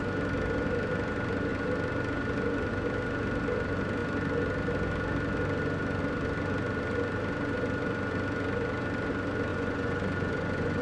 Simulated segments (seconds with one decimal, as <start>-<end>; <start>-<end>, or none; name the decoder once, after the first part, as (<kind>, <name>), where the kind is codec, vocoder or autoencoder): 9.5-10.8 (vocoder, Vocos)